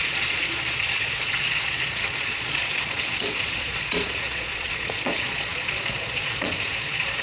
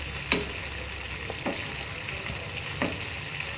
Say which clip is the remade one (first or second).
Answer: first